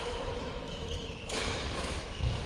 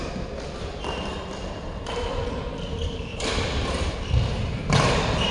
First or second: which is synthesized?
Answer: first